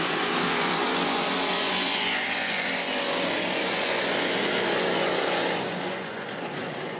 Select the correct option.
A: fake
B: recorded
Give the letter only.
A